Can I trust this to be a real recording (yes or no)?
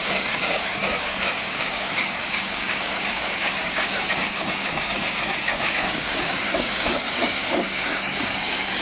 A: no